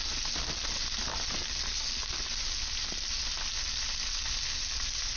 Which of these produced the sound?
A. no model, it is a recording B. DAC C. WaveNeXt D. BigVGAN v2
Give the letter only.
A